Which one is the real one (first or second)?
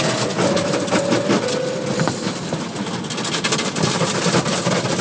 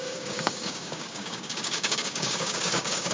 first